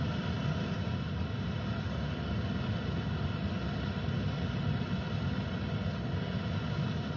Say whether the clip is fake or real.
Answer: real